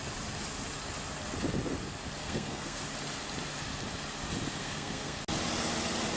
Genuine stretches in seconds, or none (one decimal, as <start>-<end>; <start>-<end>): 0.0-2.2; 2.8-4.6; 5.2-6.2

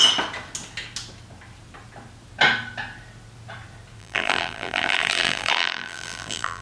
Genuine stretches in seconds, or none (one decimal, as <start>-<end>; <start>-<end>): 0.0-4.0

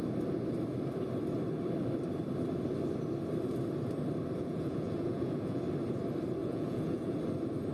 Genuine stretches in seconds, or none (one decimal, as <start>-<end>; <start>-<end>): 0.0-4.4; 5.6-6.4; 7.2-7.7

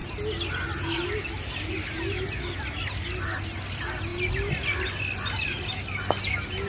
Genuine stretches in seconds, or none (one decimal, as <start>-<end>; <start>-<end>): 0.0-6.7

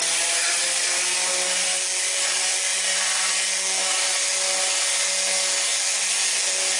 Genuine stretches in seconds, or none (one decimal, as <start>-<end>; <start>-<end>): 0.0-6.8